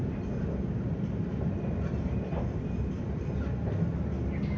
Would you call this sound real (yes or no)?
yes